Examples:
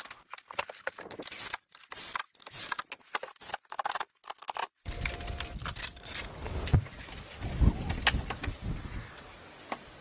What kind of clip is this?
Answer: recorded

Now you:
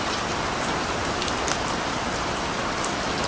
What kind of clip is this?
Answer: recorded